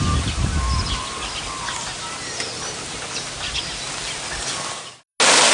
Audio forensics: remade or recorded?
recorded